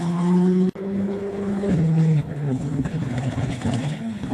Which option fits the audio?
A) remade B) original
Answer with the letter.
A